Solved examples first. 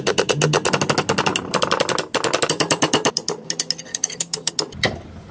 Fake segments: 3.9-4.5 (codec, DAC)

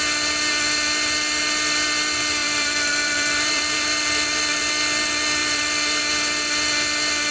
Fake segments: 2.4-4.7 (vocoder, BigVGAN v2); 5.4-6.0

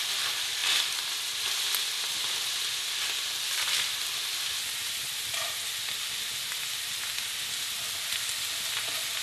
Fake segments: none